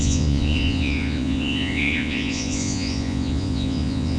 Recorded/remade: remade